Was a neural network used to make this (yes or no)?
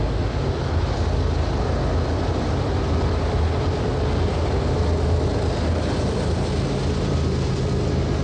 no